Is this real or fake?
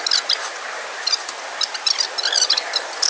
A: real